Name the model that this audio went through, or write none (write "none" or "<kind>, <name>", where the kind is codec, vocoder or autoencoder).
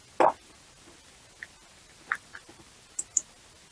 none